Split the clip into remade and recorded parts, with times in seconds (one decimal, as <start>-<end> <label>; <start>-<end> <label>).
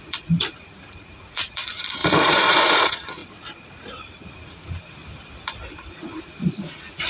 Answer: 0.0-3.2 remade; 3.2-4.3 recorded; 4.3-5.0 remade; 5.0-5.7 recorded; 5.7-7.1 remade